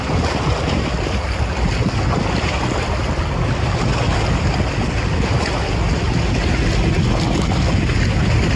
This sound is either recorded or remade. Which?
recorded